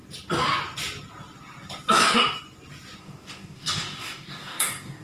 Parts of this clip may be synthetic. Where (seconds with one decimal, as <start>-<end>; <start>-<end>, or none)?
3.0-5.0